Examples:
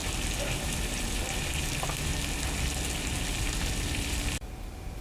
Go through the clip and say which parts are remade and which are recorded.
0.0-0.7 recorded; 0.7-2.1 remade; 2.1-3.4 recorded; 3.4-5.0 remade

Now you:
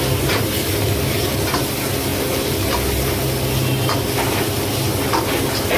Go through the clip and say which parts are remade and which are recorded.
0.0-5.8 recorded

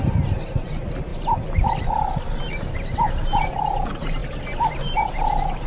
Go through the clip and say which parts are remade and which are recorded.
0.0-5.7 recorded

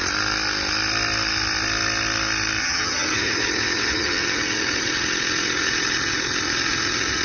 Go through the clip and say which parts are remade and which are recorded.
0.0-2.6 recorded; 2.6-7.2 remade

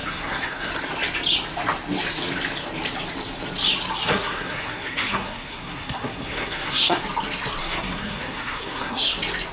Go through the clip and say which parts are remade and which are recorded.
0.0-0.7 remade; 0.7-4.0 recorded; 4.0-7.0 remade; 7.0-7.6 recorded; 7.6-9.1 remade; 9.1-9.5 recorded

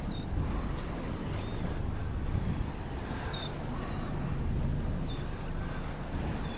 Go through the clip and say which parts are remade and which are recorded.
0.0-6.6 recorded

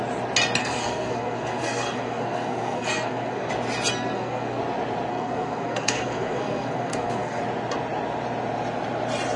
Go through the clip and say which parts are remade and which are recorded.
0.0-0.6 recorded; 0.6-3.5 remade; 3.5-3.9 recorded; 3.9-4.6 remade; 4.6-5.1 recorded; 5.1-7.4 remade; 7.4-9.4 recorded

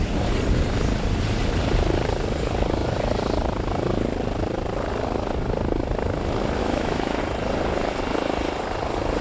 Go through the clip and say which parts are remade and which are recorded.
0.0-6.6 recorded; 6.6-7.2 remade; 7.2-9.2 recorded